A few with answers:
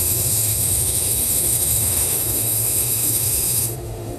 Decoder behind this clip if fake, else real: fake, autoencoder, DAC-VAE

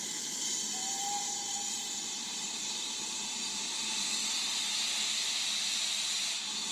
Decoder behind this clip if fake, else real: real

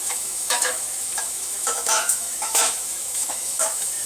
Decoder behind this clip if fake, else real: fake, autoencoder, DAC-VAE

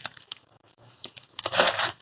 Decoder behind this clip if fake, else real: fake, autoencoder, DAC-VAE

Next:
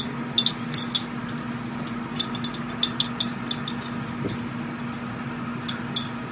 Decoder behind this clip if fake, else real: real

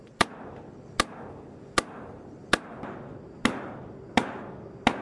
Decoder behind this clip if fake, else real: real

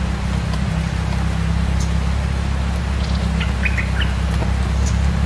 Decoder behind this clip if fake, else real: real